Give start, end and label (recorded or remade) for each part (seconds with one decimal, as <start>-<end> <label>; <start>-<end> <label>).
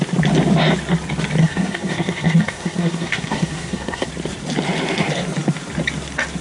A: 0.0-1.4 recorded; 1.4-4.1 remade; 4.1-6.4 recorded